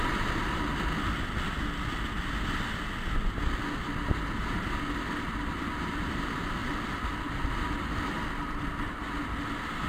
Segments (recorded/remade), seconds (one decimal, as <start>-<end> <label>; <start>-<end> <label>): 0.0-9.9 recorded